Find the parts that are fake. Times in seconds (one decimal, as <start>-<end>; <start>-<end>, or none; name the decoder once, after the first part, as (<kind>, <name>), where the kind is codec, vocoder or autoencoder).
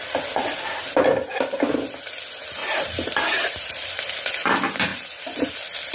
2.6-4.2 (vocoder, BigVGAN v2); 4.9-5.5